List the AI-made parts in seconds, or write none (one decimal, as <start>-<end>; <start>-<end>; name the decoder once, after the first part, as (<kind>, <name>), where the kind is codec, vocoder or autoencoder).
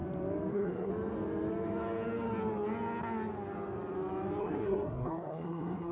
0.5-0.9 (codec, SNAC); 4.4-5.9